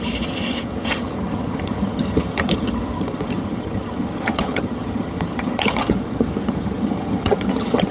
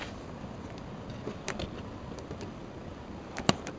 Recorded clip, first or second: second